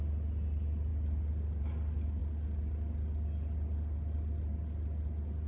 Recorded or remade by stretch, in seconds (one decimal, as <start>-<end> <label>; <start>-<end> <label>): 0.0-5.5 recorded